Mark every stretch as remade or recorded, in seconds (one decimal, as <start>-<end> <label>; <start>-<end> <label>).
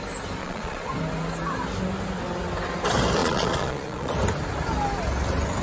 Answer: 0.0-0.4 recorded; 0.4-0.9 remade; 0.9-3.2 recorded; 3.2-4.1 remade; 4.1-5.6 recorded